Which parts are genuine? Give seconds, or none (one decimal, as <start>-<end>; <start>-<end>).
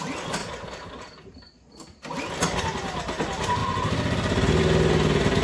0.0-5.4